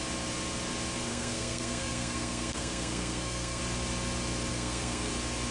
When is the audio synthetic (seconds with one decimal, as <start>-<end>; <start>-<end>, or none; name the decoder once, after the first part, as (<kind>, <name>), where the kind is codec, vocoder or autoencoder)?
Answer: 1.1-3.6 (codec, SNAC); 4.5-5.1